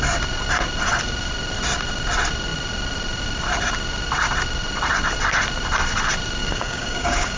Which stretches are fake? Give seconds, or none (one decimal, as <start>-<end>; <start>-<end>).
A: 6.4-7.4

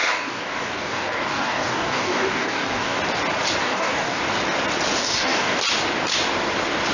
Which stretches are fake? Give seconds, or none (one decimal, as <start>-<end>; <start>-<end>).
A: 0.0-3.0; 3.6-4.2; 5.0-5.6

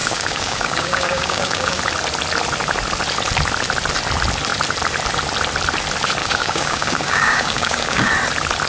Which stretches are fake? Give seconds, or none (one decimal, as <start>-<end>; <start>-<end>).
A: 0.0-1.8; 6.2-8.1